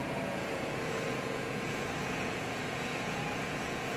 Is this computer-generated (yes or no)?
yes